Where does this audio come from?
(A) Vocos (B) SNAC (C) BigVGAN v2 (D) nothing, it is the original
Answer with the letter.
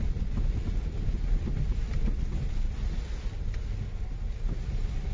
D